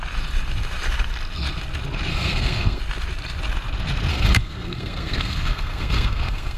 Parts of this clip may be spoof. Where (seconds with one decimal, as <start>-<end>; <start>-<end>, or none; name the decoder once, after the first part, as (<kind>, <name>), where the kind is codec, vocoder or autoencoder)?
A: 2.1-2.8 (codec, SNAC); 4.1-6.6